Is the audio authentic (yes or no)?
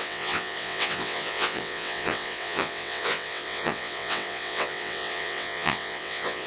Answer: no